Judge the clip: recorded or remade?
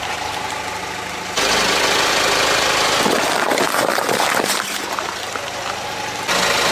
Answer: recorded